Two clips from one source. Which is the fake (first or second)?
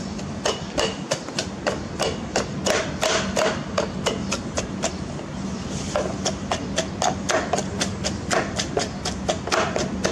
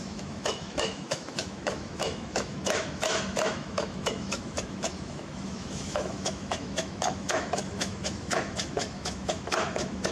second